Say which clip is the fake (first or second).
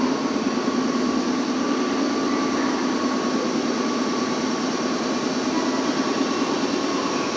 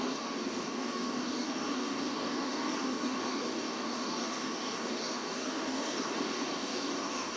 second